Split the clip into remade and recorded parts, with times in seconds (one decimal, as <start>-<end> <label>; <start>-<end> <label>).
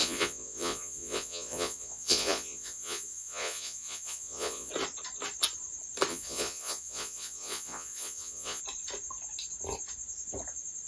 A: 0.0-4.7 remade; 4.7-6.1 recorded; 6.1-8.6 remade; 8.6-10.9 recorded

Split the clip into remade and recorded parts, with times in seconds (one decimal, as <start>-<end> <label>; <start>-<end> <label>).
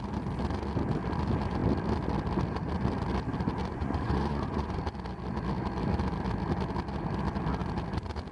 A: 0.0-3.6 recorded; 3.6-4.8 remade; 4.8-8.3 recorded